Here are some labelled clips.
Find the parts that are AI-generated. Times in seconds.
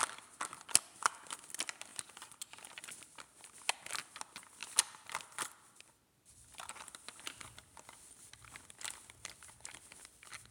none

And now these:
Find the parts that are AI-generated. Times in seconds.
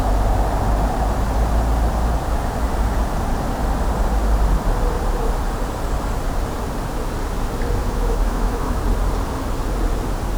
7.8-8.8 (autoencoder, DAC-VAE)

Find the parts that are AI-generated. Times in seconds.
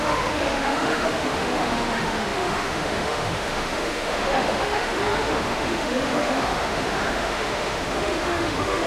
0.0-8.9 (autoencoder, DAC-VAE)